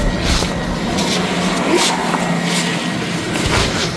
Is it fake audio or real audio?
real